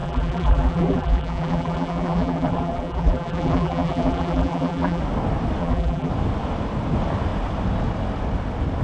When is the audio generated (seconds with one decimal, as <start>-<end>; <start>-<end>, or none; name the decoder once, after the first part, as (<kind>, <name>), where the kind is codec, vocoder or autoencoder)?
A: 0.0-5.0 (vocoder, BigVGAN v2); 5.6-6.1